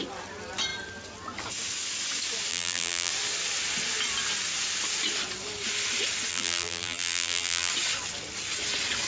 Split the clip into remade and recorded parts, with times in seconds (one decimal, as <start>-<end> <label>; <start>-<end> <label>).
0.0-2.5 recorded; 2.5-3.1 remade; 3.1-6.3 recorded; 6.3-7.7 remade; 7.7-9.1 recorded